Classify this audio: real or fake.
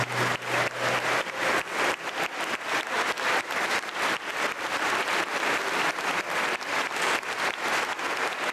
real